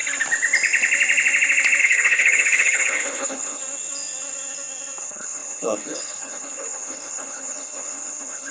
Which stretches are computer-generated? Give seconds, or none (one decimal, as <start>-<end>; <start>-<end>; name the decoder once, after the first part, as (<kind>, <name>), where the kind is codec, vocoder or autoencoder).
1.8-3.6 (codec, HILCodec); 5.0-8.5